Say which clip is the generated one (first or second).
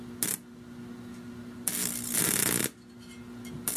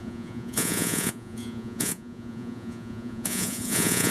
second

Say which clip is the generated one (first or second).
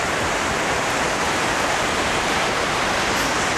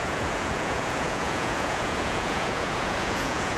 second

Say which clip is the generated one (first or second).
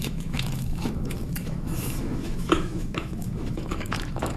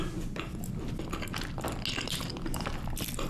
first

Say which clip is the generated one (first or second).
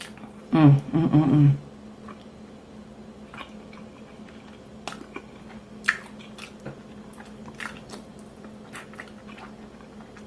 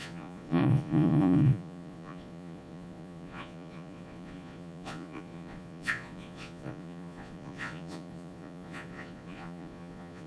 second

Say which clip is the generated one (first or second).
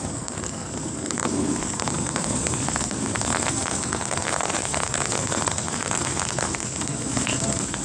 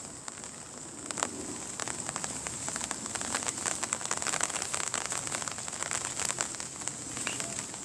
first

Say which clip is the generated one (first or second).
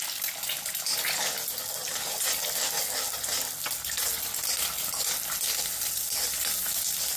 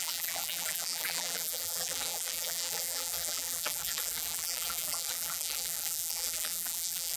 second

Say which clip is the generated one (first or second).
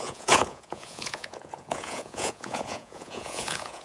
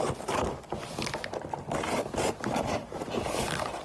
first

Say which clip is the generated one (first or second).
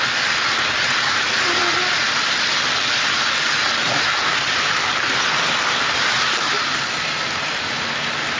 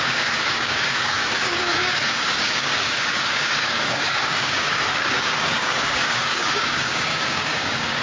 second